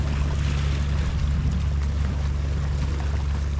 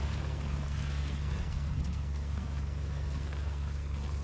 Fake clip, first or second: second